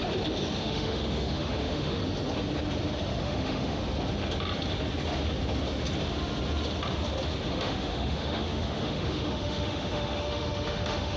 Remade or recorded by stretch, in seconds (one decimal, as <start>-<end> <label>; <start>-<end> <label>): 0.0-0.6 recorded; 0.6-2.0 remade; 2.0-3.2 recorded; 3.2-3.8 remade; 3.8-7.5 recorded; 7.5-11.2 remade